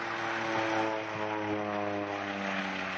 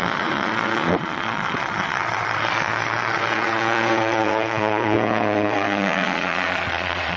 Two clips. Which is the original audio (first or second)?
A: first